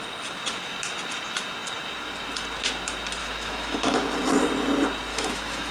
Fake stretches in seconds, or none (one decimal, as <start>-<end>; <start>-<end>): 3.2-4.1; 5.1-5.7

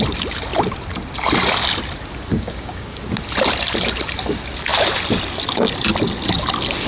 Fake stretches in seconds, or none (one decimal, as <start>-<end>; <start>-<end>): 2.3-3.0

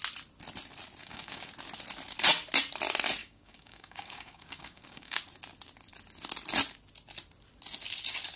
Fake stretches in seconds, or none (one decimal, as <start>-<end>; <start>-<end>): 1.0-1.5; 3.2-5.2

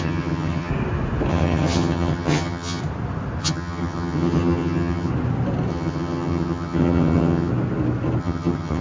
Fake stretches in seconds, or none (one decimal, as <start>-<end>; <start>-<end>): 0.0-0.7; 1.3-2.8; 3.4-5.1; 5.7-7.5; 8.2-8.8

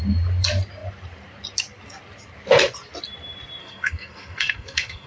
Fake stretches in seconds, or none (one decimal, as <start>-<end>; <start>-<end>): 3.6-5.1